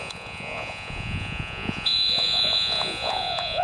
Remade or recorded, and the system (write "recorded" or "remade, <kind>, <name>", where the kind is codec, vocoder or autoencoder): remade, vocoder, Vocos